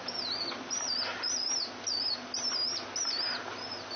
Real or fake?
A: real